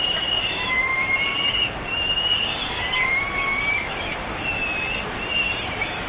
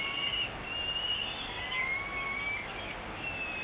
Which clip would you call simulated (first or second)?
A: first